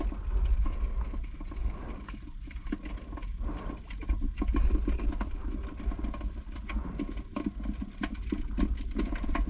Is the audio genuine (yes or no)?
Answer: yes